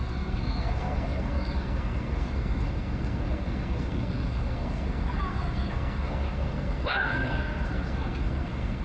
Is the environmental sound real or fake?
fake